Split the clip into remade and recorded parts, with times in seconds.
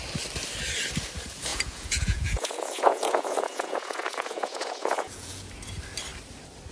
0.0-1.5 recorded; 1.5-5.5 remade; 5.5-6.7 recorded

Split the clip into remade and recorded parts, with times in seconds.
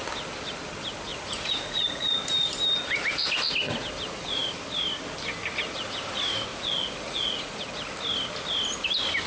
0.0-1.1 recorded; 1.1-2.1 remade; 2.1-6.5 recorded; 6.5-7.6 remade; 7.6-9.3 recorded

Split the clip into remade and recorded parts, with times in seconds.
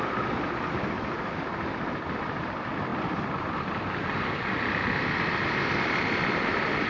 0.0-6.9 recorded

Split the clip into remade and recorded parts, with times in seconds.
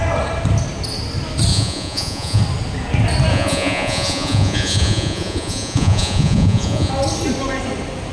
0.0-1.5 recorded; 1.5-2.4 remade; 2.4-3.3 recorded; 3.3-6.9 remade; 6.9-8.1 recorded